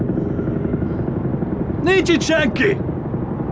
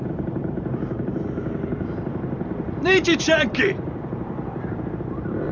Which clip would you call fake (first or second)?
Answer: second